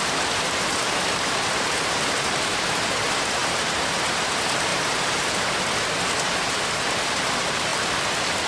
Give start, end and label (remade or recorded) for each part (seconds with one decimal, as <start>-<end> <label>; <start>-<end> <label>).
0.0-7.7 remade; 7.7-8.5 recorded